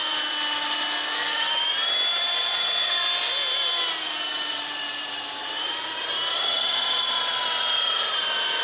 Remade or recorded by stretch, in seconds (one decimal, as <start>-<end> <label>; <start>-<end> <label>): 0.0-2.1 recorded; 2.1-2.9 remade; 2.9-4.3 recorded; 4.3-8.2 remade; 8.2-8.6 recorded